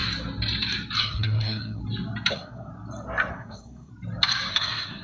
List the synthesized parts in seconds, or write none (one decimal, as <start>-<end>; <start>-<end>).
1.0-1.8; 2.3-2.7; 3.3-3.9; 4.5-5.0